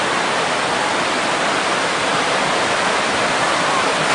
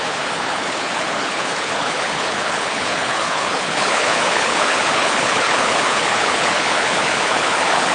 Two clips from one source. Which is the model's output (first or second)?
second